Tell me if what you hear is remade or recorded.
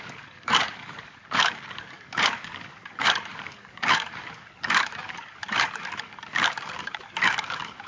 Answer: remade